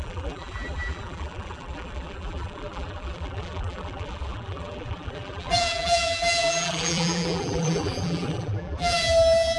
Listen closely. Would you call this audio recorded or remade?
remade